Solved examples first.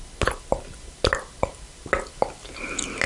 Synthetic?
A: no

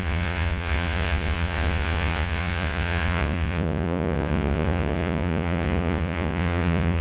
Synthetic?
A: yes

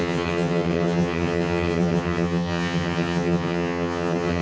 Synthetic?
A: yes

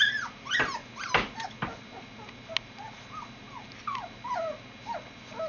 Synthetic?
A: no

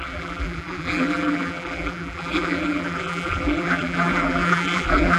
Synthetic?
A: yes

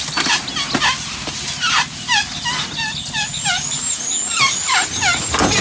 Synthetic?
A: no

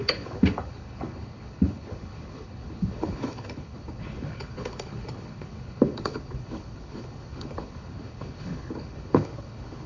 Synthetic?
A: yes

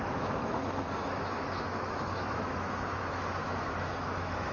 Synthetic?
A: yes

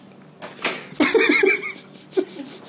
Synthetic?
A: no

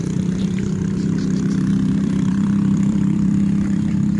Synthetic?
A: yes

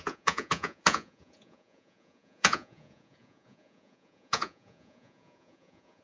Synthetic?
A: yes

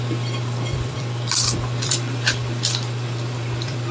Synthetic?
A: yes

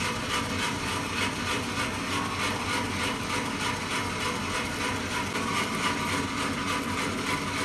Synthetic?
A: no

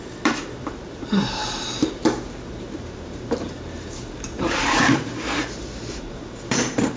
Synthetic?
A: yes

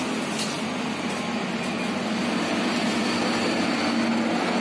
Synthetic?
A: no